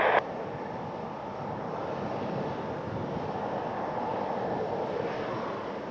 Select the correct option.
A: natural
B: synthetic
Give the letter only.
A